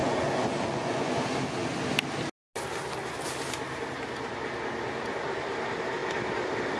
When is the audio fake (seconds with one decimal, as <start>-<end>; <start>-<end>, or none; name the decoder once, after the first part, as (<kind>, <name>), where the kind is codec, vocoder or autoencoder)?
0.0-1.2 (vocoder, Vocos)